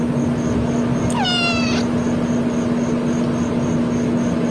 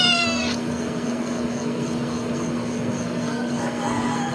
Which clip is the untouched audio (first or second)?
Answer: first